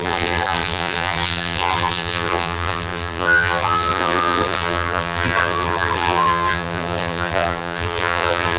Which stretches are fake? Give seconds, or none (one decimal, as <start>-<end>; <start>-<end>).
0.0-8.6